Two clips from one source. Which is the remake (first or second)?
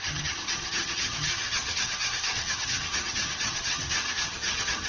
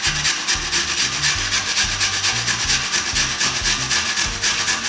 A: first